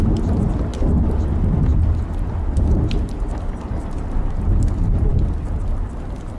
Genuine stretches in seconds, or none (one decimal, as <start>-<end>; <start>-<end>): 0.0-6.4